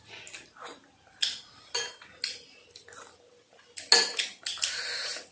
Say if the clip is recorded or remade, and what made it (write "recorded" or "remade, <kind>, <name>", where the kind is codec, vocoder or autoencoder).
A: recorded